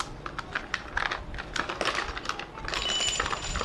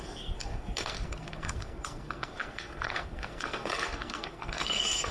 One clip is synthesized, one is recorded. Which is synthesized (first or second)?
second